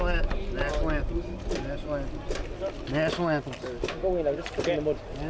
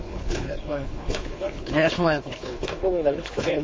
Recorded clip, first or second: first